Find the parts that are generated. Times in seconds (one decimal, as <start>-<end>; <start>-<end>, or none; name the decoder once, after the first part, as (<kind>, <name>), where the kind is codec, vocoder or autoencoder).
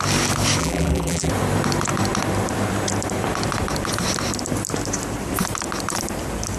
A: 0.6-1.3 (vocoder, BigVGAN v2)